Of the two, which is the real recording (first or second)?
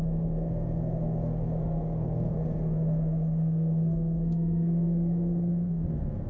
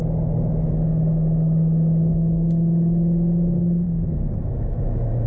second